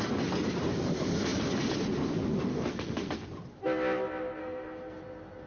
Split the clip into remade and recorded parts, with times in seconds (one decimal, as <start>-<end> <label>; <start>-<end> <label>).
0.0-2.5 recorded; 2.5-3.3 remade; 3.3-4.4 recorded; 4.4-5.0 remade; 5.0-5.5 recorded